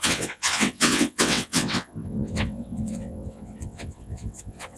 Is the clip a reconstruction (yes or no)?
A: yes